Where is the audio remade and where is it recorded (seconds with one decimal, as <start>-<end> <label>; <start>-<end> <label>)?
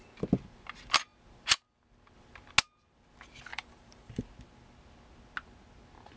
0.0-3.5 recorded; 3.5-4.2 remade; 4.2-6.2 recorded